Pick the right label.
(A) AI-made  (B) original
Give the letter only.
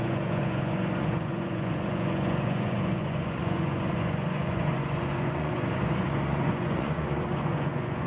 A